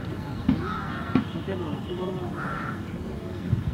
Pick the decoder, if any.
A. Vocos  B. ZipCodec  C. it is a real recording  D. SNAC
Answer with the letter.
D